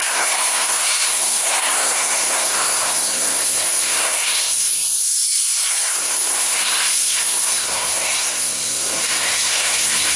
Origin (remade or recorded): remade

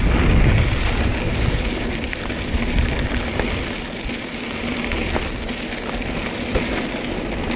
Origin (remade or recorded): recorded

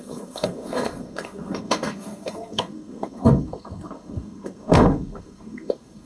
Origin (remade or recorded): remade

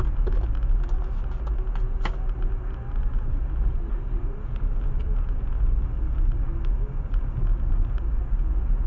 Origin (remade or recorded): recorded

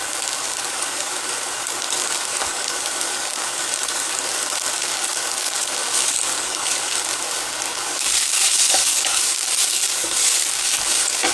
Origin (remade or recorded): remade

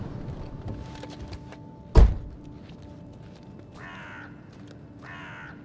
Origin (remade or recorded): recorded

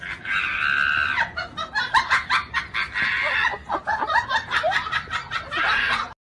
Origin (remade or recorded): recorded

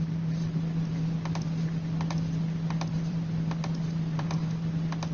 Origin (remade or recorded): remade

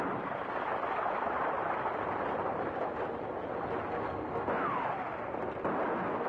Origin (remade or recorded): recorded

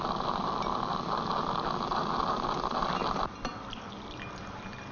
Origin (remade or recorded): recorded